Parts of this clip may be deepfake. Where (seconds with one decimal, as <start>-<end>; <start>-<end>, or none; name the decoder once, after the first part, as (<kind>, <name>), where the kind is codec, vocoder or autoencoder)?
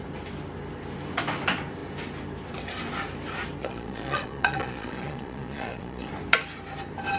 3.6-6.1 (vocoder, Vocos)